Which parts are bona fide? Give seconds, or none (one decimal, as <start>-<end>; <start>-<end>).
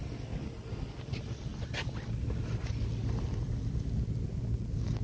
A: 0.0-5.0